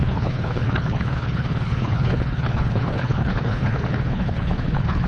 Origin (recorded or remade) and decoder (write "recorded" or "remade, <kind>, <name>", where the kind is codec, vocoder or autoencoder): remade, codec, HILCodec